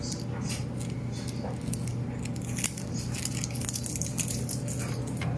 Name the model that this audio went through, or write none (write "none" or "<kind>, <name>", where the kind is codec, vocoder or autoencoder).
none